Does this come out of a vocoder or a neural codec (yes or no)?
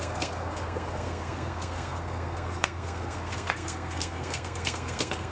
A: yes